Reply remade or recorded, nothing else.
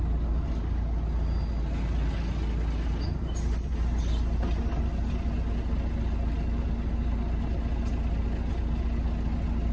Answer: recorded